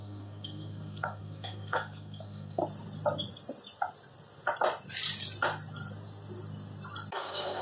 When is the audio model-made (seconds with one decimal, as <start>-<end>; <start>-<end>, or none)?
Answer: 0.0-2.6; 7.1-7.6